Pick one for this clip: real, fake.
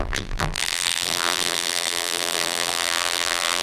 fake